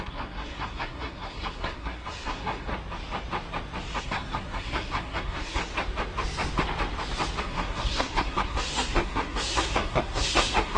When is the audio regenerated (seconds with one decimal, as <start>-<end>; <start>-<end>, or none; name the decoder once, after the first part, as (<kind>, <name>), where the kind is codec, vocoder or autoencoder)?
0.0-2.7 (codec, SNAC); 4.0-5.6; 7.4-10.8